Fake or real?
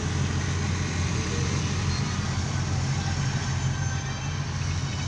real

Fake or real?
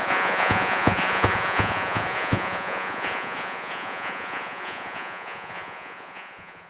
fake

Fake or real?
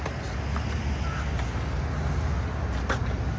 real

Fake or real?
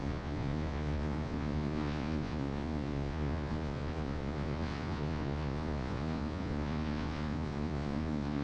fake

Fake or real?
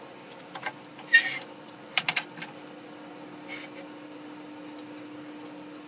real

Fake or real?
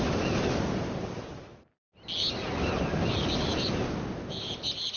real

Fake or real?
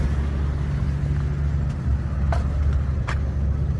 real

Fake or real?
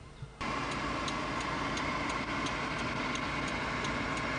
real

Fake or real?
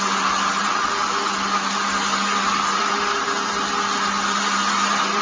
real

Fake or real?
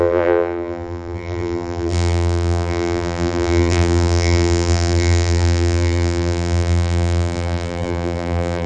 fake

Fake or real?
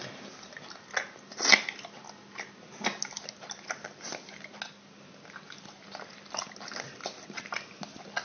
real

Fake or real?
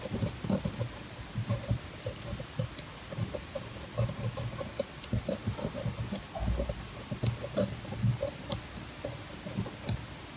real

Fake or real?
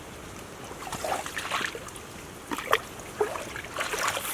real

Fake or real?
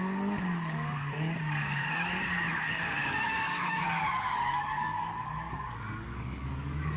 fake